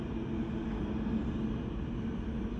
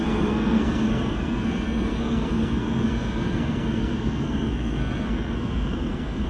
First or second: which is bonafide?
first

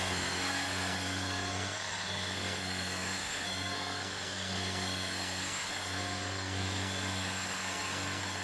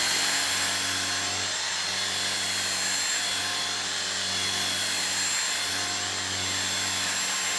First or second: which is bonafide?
second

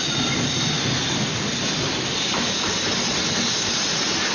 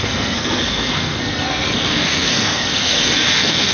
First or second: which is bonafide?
first